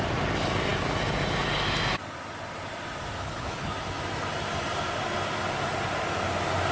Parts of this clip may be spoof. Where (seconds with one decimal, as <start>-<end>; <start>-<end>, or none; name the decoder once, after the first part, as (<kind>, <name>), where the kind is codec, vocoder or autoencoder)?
3.2-3.7 (codec, HILCodec)